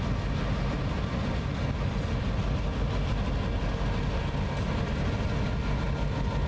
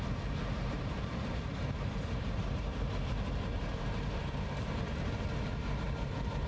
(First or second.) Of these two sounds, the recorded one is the first